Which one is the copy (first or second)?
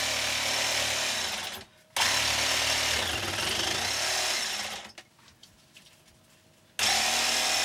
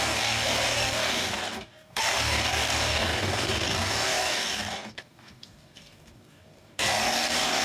second